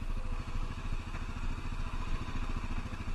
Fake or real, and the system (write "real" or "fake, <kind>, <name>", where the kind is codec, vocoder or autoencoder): real